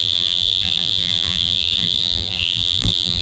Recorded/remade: remade